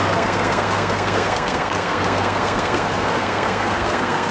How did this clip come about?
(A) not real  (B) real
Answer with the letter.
A